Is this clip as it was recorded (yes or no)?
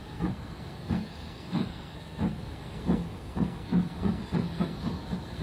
no